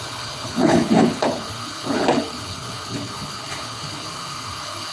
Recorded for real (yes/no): no